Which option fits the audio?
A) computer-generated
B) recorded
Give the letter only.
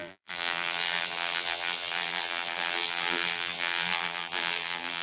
A